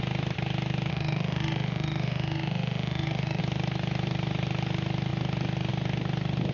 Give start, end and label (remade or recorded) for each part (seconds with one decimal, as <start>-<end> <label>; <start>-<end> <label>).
0.0-0.9 recorded; 0.9-3.4 remade; 3.4-6.5 recorded